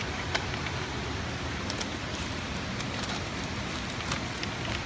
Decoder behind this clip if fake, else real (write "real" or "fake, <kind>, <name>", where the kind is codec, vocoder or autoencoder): real